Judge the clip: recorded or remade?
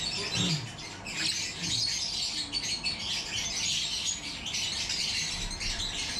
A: recorded